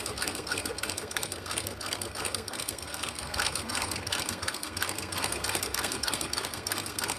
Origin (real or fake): fake